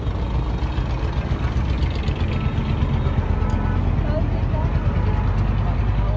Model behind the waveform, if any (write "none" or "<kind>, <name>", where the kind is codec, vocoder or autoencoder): none